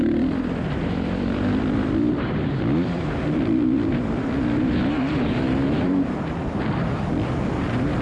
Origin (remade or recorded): remade